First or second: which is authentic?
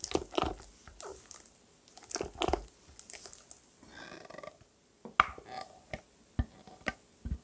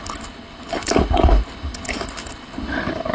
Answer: first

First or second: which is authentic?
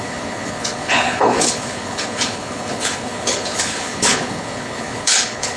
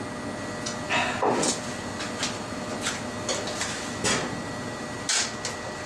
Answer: second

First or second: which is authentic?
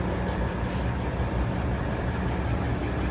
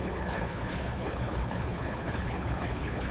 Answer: first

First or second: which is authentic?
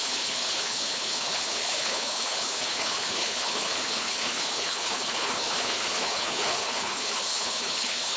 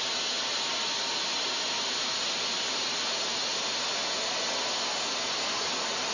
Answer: second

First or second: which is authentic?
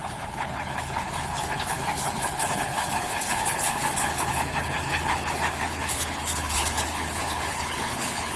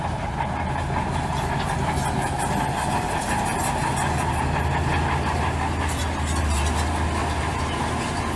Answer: second